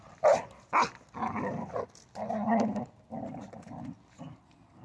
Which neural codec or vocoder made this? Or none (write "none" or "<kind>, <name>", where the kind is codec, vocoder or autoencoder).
none